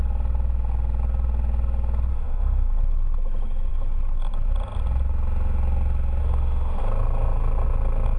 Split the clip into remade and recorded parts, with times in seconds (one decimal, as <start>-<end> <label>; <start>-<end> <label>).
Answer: 0.0-2.1 recorded; 2.1-2.7 remade; 2.7-6.2 recorded; 6.2-6.8 remade; 6.8-8.2 recorded